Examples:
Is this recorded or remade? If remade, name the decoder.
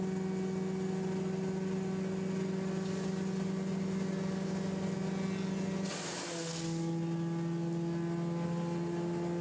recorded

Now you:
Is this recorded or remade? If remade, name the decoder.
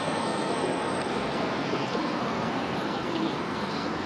remade, codec, SNAC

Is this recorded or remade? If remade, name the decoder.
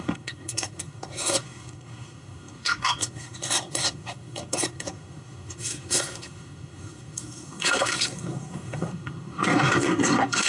remade, codec, SNAC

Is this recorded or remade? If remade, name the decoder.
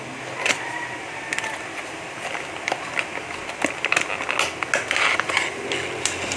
recorded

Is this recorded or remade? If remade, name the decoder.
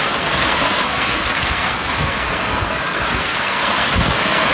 remade, codec, SNAC